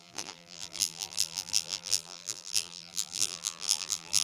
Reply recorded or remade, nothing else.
remade